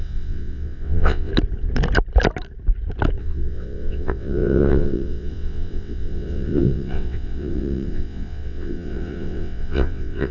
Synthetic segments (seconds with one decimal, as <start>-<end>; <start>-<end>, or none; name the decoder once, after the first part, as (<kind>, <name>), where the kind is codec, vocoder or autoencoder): 0.0-1.3 (vocoder, WaveNeXt); 3.2-10.3